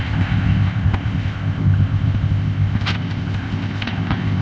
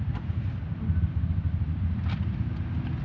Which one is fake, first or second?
first